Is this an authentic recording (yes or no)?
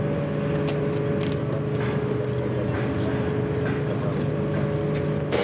yes